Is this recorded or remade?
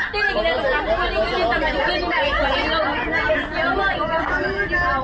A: recorded